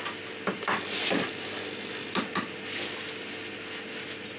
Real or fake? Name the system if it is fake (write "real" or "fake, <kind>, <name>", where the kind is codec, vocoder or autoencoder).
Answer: real